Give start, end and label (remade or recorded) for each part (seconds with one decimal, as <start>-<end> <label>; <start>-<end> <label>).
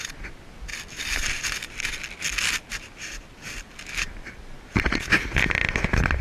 0.0-6.2 recorded